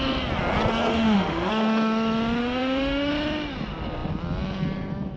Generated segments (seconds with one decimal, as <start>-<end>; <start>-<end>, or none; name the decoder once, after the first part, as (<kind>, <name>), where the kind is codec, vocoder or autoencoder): 0.9-1.5 (autoencoder, DAC-VAE); 2.4-3.1